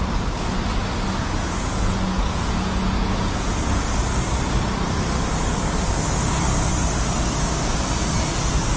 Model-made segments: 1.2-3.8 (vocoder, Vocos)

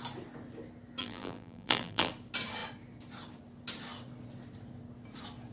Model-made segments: 1.0-2.1 (vocoder, BigVGAN v2)

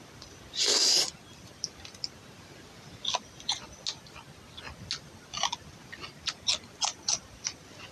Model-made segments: none

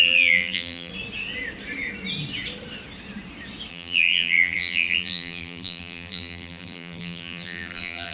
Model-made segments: 0.0-0.9 (vocoder, BigVGAN v2); 3.7-8.1